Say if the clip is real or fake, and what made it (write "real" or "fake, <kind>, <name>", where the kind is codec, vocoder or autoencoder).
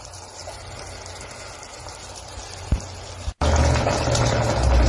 real